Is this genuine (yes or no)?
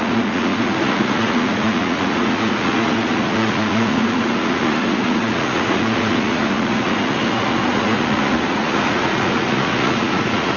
no